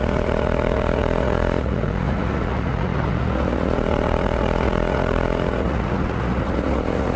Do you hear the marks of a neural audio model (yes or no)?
yes